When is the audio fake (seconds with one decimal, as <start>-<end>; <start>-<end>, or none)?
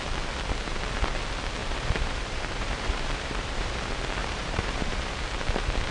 1.6-3.8; 4.2-5.1